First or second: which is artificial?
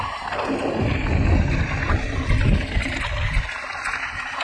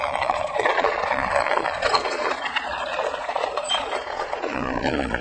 second